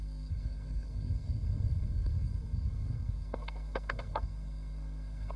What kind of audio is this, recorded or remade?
remade